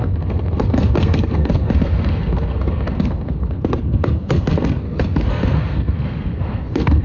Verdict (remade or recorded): remade